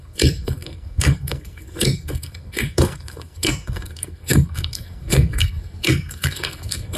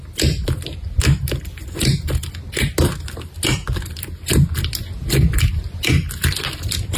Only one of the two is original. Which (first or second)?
second